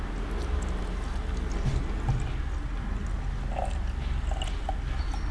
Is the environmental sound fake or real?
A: real